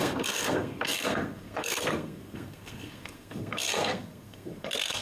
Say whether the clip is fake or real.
fake